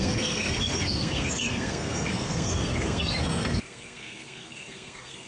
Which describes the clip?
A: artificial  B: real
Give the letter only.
A